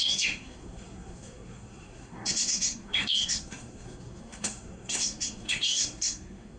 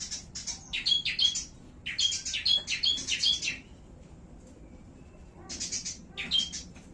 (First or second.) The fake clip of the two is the first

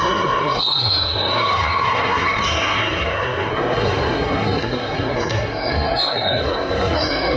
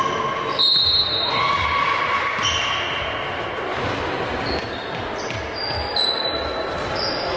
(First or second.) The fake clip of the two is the first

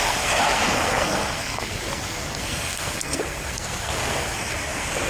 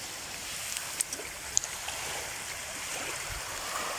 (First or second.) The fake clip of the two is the first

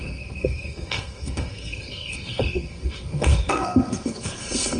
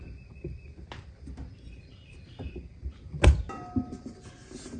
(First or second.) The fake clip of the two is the first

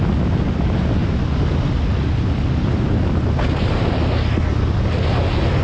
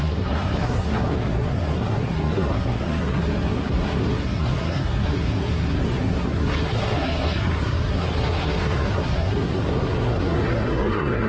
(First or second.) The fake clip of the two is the second